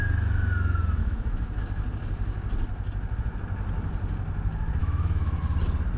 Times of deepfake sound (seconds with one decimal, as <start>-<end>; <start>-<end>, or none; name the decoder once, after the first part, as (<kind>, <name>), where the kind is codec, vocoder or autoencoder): 1.0-1.6 (autoencoder, DAC-VAE); 4.8-5.4